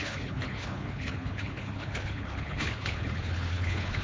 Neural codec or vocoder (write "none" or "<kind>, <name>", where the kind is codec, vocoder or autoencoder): codec, HILCodec